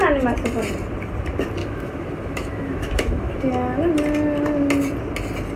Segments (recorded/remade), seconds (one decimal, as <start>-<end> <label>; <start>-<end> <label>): 0.0-1.6 recorded; 1.6-3.5 remade; 3.5-5.6 recorded